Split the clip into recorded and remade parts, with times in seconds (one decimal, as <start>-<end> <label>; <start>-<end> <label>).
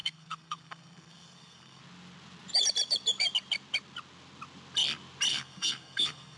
0.0-1.8 remade; 1.8-5.3 recorded; 5.3-6.4 remade